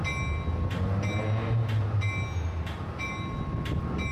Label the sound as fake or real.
real